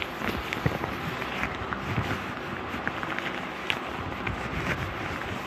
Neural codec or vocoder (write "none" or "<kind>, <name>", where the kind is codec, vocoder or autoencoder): none